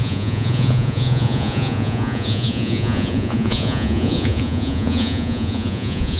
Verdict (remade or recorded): remade